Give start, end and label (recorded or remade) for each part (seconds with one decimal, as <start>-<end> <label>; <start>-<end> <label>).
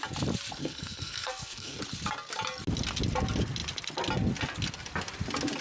0.0-0.6 recorded; 0.6-1.8 remade; 1.8-5.6 recorded